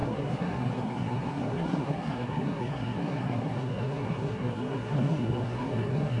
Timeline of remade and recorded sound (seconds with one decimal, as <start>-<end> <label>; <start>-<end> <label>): 0.0-6.2 remade